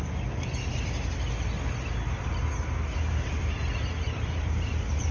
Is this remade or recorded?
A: recorded